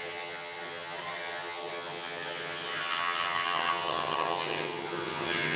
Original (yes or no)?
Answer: no